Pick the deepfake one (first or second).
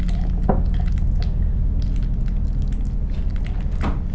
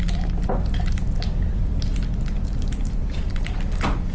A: second